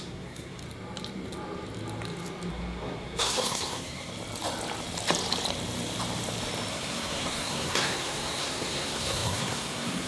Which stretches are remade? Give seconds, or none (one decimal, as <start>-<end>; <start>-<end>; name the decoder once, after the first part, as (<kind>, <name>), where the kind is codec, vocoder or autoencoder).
0.0-0.6 (codec, SNAC); 2.5-4.1; 6.7-10.1